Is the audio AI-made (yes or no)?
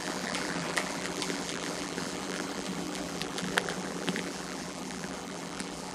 yes